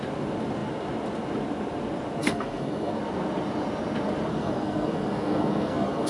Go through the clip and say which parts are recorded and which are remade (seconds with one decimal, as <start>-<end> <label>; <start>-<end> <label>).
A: 0.0-2.2 recorded; 2.2-3.0 remade; 3.0-4.3 recorded; 4.3-6.1 remade